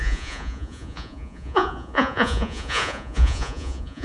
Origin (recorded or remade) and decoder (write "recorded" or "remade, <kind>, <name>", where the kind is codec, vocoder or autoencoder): remade, vocoder, Vocos